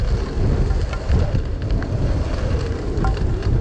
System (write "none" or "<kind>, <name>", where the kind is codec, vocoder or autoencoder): none